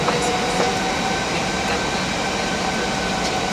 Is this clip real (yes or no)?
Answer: yes